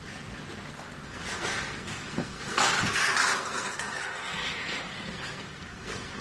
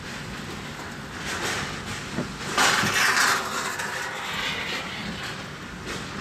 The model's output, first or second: first